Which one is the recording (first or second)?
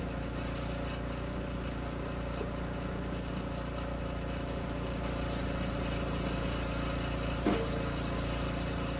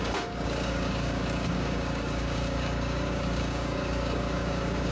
first